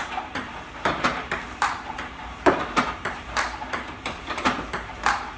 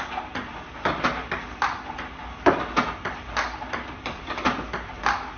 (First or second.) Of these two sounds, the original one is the second